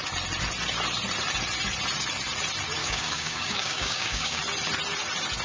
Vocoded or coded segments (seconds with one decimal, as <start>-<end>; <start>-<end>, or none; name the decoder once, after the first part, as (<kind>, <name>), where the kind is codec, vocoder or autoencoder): 2.8-4.4 (codec, DAC)